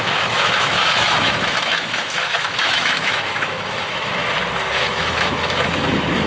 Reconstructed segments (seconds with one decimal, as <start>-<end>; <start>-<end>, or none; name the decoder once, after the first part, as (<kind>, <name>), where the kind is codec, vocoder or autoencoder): 0.0-4.2 (autoencoder, DAC-VAE); 4.7-6.3